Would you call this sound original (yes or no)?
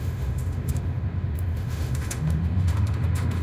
no